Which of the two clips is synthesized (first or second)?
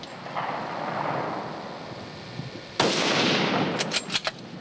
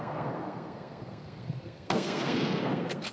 second